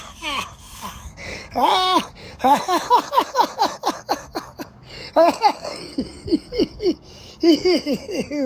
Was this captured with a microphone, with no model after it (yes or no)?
no